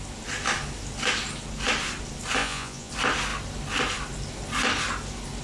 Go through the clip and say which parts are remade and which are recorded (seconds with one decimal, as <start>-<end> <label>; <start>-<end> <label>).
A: 0.0-2.4 recorded; 2.4-2.9 remade; 2.9-5.4 recorded